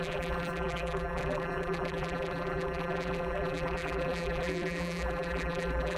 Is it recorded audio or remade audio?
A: remade